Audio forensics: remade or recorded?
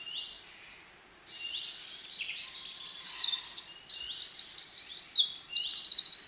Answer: remade